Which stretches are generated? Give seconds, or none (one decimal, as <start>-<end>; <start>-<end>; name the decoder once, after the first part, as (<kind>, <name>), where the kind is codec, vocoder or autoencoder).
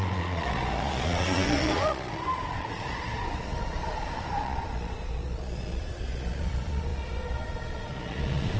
0.0-8.6 (vocoder, Vocos)